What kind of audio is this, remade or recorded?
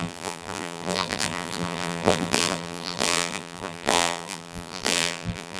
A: remade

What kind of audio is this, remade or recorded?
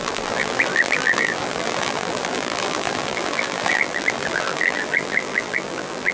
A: remade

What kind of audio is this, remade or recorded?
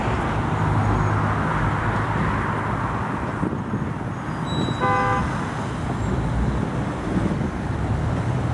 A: recorded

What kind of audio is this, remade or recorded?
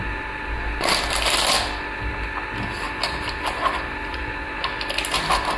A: recorded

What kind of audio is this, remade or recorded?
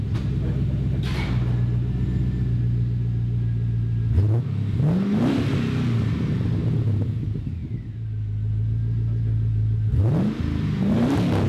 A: recorded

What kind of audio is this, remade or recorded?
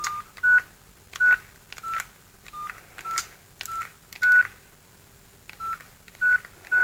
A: recorded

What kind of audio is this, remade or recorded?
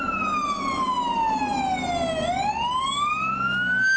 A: recorded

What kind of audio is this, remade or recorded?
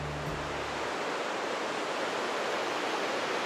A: recorded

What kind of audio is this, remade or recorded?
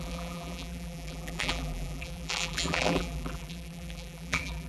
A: remade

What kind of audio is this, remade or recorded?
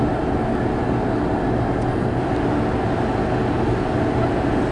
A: recorded